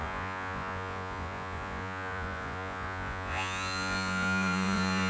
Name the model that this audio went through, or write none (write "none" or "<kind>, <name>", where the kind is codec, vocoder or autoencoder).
vocoder, Vocos